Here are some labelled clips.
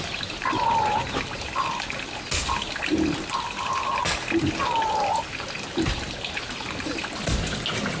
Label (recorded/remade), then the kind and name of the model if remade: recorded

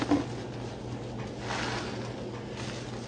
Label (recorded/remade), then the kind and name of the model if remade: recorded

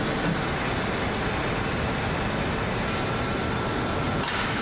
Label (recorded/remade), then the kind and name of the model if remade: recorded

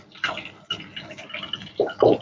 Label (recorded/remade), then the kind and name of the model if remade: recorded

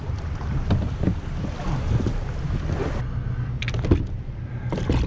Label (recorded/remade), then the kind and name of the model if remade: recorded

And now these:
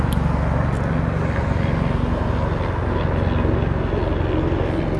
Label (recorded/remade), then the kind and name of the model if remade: recorded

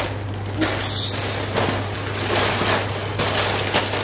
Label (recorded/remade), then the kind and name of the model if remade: recorded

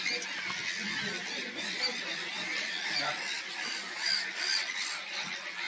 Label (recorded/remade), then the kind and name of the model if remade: recorded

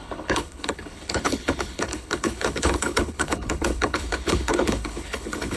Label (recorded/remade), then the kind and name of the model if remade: remade, codec, HILCodec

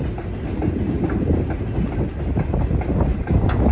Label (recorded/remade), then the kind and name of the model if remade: recorded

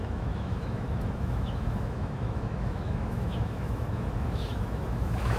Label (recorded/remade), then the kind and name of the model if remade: remade, autoencoder, DAC-VAE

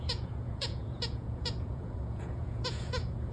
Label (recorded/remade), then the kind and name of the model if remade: remade, vocoder, Vocos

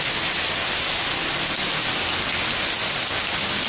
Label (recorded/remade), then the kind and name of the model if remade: recorded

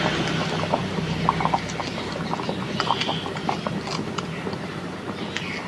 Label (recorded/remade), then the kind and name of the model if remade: recorded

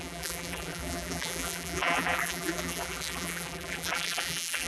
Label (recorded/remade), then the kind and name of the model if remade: remade, vocoder, BigVGAN v2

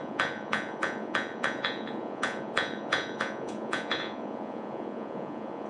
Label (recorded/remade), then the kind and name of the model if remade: remade, vocoder, Vocos